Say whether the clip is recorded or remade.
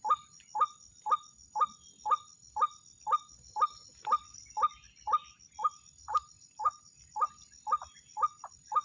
recorded